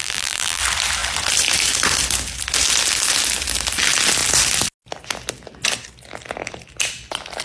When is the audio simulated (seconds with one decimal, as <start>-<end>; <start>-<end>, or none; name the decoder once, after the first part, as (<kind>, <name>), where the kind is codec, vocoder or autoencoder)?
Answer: 0.0-0.6 (vocoder, BigVGAN v2)